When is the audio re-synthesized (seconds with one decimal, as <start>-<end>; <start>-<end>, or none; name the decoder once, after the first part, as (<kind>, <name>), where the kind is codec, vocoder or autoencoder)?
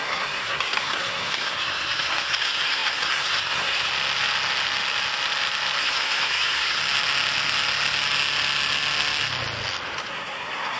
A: 0.0-3.9 (codec, SNAC); 5.8-6.8; 10.1-10.8